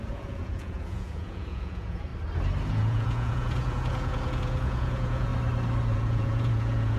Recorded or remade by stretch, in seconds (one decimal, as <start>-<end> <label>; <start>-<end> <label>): 0.0-2.1 remade; 2.1-2.7 recorded; 2.7-5.3 remade; 5.3-5.9 recorded; 5.9-7.0 remade